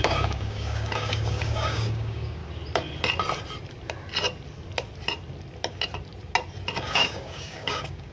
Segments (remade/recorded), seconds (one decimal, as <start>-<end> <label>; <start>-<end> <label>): 0.0-2.4 remade; 2.4-6.8 recorded; 6.8-8.1 remade